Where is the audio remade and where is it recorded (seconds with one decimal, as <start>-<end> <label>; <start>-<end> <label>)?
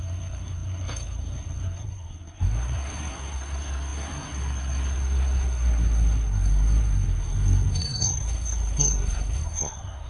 0.0-10.1 remade